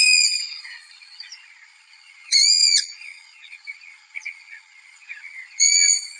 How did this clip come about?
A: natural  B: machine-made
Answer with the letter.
B